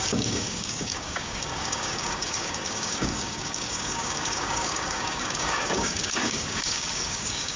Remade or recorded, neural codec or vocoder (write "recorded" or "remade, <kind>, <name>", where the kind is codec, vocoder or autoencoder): remade, codec, DAC